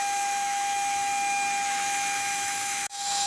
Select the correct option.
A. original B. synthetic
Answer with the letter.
B